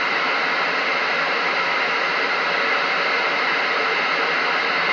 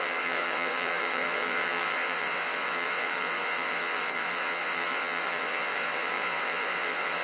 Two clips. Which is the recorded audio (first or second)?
first